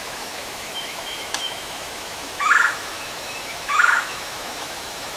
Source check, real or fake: fake